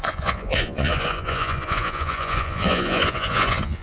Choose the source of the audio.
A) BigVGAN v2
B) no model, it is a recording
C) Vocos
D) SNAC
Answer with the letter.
C